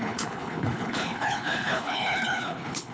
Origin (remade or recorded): remade